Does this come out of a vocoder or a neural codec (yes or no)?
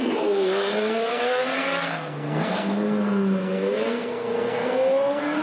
yes